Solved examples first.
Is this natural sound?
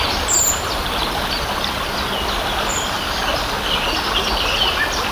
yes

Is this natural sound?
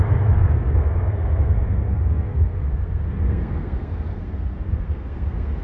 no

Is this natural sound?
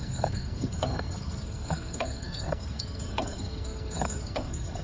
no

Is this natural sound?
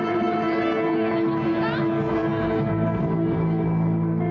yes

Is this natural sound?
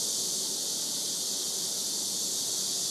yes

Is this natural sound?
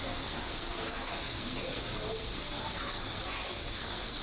no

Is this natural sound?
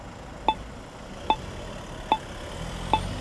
yes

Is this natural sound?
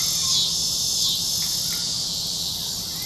yes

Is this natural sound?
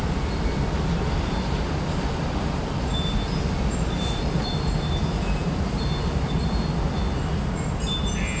yes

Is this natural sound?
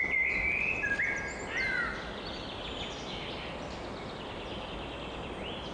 yes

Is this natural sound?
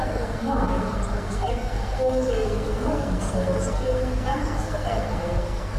no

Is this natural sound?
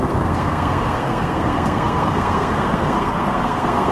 no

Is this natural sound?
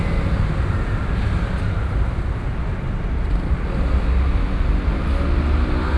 yes